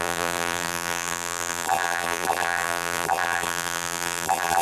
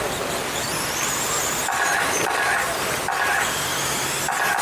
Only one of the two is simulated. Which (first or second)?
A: first